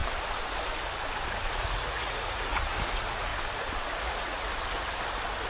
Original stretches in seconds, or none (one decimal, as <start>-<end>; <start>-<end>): 0.0-1.5; 3.3-4.0; 4.5-5.5